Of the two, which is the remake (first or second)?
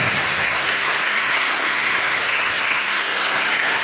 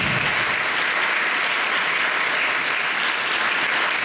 first